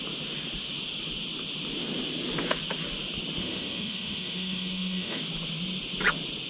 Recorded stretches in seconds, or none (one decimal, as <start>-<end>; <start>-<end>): 0.0-3.4; 5.2-6.5